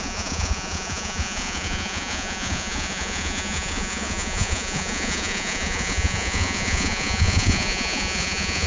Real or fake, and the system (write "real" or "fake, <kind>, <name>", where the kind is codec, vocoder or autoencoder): fake, vocoder, Vocos